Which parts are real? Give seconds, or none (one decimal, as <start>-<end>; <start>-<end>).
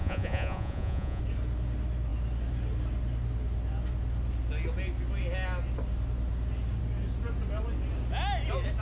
1.2-8.8